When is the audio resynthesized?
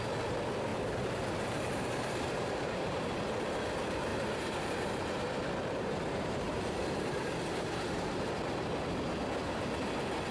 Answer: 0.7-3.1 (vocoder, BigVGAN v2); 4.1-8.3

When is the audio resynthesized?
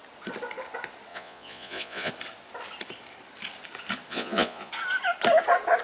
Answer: 1.1-2.1 (vocoder, Vocos); 4.1-4.7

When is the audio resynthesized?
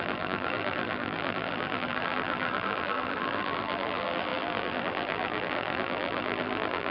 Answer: 0.0-6.9 (vocoder, BigVGAN v2)